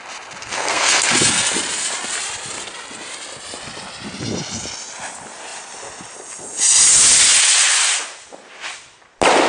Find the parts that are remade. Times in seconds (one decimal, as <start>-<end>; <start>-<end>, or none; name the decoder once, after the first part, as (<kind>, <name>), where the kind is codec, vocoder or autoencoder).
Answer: 0.4-1.1 (codec, SNAC)